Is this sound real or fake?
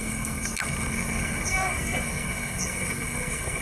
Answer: fake